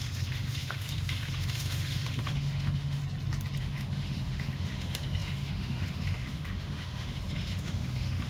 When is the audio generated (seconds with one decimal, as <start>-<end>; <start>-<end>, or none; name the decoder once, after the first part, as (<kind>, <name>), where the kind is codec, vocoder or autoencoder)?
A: 0.0-3.0 (autoencoder, DAC-VAE); 3.6-8.3